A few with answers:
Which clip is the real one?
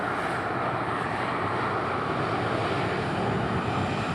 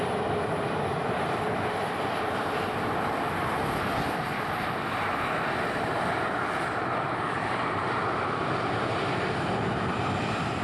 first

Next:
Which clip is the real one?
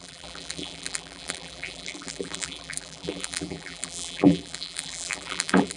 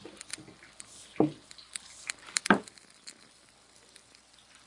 second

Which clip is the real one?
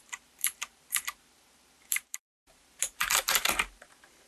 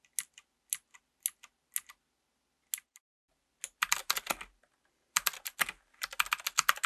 second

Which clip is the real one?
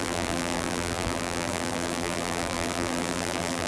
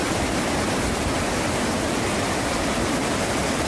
second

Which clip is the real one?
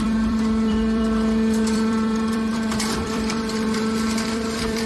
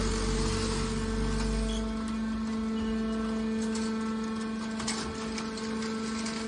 second